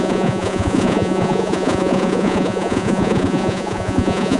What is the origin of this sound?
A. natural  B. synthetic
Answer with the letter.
B